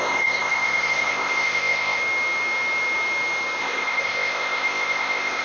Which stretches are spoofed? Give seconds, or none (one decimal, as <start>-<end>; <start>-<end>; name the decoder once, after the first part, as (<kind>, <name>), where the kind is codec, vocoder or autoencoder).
0.0-2.0 (codec, ZipCodec); 3.6-5.4